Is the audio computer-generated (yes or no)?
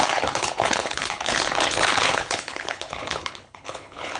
yes